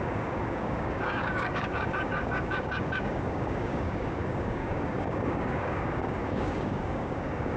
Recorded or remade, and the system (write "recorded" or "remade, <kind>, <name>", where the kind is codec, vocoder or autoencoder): remade, codec, DAC